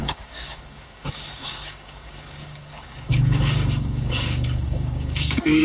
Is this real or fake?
fake